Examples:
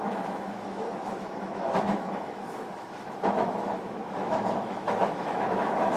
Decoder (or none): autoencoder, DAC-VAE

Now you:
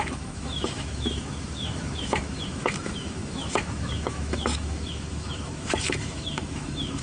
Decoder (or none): autoencoder, DAC-VAE